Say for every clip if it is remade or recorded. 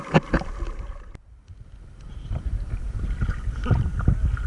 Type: recorded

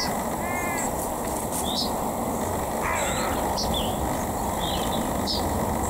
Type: recorded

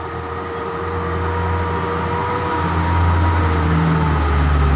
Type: recorded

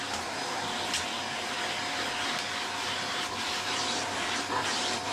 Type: recorded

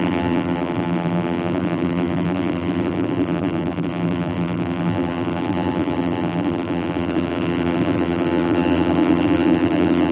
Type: remade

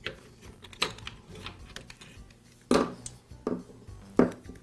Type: recorded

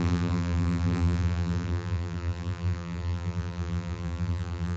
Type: remade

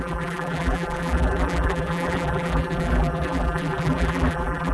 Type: remade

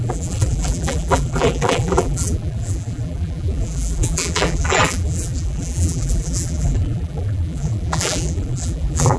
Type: remade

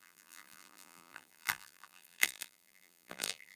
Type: remade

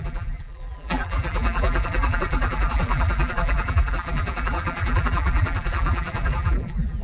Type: remade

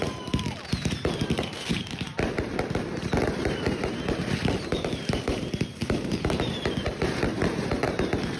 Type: remade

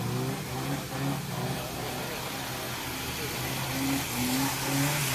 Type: recorded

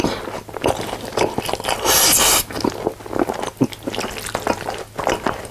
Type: recorded